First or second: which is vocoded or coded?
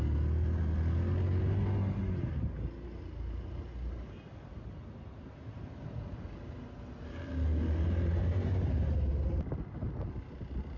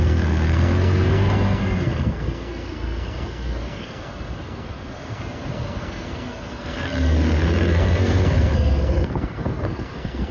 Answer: second